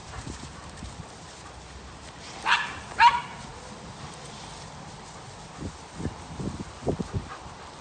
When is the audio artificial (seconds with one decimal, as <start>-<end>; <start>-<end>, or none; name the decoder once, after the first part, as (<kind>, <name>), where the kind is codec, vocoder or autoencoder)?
0.0-0.9 (vocoder, BigVGAN v2)